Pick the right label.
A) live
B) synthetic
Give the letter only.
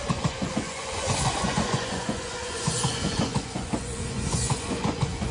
B